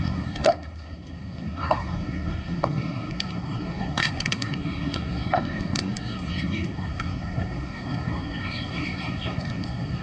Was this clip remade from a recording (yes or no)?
yes